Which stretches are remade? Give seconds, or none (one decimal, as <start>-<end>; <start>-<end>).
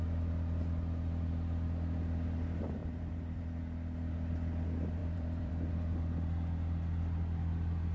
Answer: 2.8-3.4; 5.0-5.5